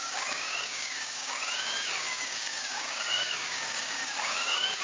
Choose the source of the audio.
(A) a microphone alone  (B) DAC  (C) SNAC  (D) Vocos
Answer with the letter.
B